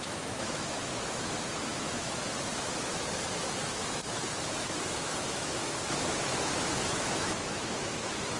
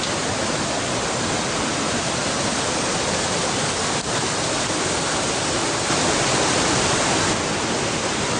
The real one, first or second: second